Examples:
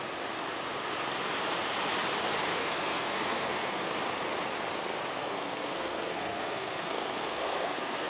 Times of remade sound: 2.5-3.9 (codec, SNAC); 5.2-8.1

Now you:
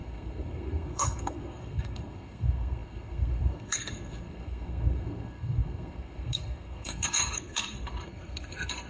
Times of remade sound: 0.0-8.9 (codec, SNAC)

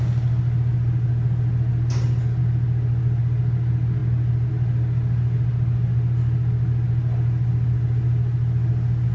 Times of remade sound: none

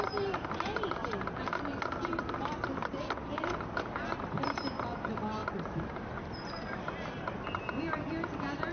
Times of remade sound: 5.4-7.7 (vocoder, BigVGAN v2)

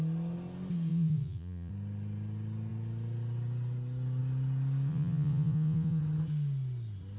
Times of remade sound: 0.9-1.7 (vocoder, Vocos); 4.9-6.0

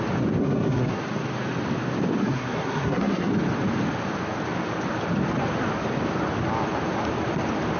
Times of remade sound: 0.4-1.0 (codec, SNAC); 2.2-3.3